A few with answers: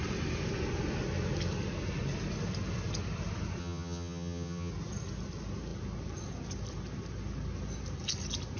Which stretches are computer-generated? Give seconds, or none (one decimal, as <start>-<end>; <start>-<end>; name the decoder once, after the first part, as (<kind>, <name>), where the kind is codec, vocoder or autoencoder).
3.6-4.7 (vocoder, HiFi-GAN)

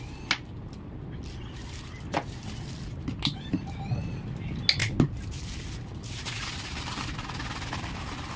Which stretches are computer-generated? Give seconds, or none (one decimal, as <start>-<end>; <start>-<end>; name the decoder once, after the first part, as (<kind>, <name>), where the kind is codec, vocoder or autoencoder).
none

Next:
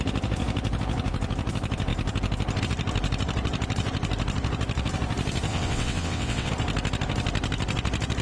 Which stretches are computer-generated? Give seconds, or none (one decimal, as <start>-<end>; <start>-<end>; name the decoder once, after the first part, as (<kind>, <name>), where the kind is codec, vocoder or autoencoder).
5.5-6.5 (vocoder, WaveNeXt)